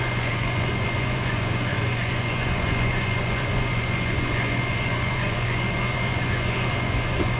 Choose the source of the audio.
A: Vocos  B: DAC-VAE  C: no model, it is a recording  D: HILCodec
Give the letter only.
A